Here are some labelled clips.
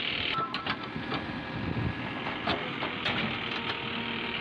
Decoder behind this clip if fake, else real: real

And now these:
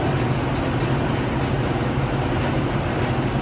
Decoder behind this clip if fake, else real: real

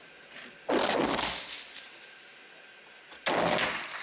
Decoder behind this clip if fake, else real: real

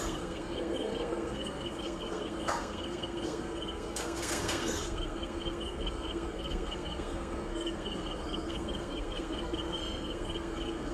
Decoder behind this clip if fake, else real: fake, codec, SNAC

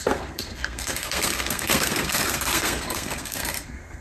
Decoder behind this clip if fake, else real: fake, codec, SNAC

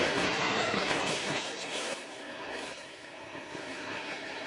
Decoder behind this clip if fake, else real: fake, codec, SNAC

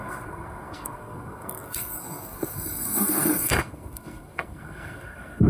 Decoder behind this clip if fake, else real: fake, codec, SNAC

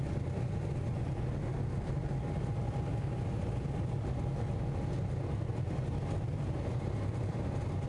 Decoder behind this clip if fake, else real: real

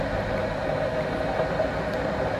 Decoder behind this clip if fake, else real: real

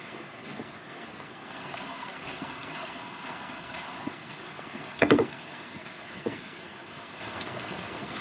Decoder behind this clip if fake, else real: fake, codec, SNAC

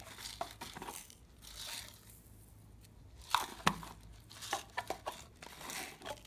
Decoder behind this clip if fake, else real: real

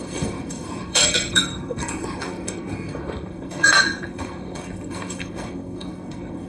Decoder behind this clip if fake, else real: fake, codec, SNAC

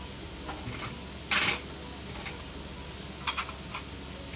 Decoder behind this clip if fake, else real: real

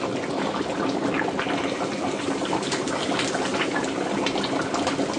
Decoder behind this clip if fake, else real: real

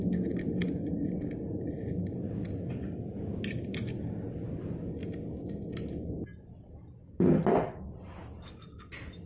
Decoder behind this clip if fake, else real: real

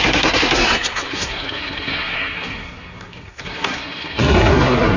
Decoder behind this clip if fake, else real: fake, codec, SNAC